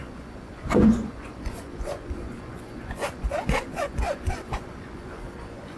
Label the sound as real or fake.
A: fake